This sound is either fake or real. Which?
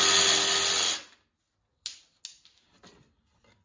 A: real